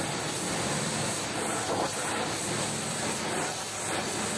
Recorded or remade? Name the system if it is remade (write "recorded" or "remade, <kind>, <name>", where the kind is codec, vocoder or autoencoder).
recorded